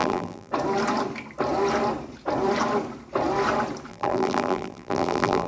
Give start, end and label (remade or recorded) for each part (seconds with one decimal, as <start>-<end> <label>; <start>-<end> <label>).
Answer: 0.0-0.5 remade; 0.5-3.9 recorded; 3.9-5.5 remade